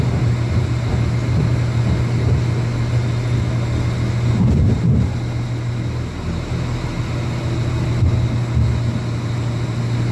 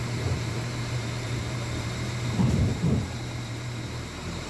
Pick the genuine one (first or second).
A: first